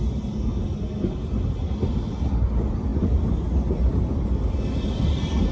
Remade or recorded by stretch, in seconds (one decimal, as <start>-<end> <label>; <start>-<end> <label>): 0.0-5.5 recorded

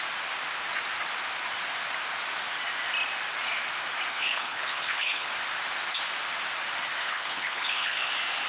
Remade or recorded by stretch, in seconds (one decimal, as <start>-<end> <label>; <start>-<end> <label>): 0.0-4.1 recorded; 4.1-5.3 remade; 5.3-7.0 recorded; 7.0-8.1 remade; 8.1-8.5 recorded

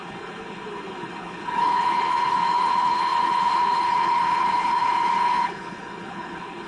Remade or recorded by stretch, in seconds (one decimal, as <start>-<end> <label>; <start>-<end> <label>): 0.0-6.7 remade

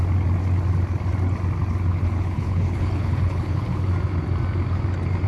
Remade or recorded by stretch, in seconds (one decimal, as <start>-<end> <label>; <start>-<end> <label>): 0.0-1.9 recorded; 1.9-3.9 remade; 3.9-5.3 recorded